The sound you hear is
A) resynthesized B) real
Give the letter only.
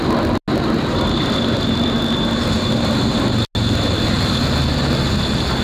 B